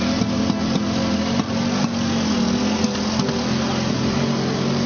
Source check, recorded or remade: recorded